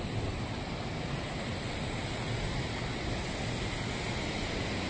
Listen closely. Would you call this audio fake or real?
real